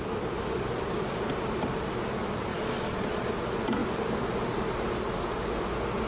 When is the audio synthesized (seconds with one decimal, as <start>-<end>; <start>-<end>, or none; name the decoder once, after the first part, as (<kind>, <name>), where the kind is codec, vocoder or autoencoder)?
2.5-3.3 (vocoder, Vocos)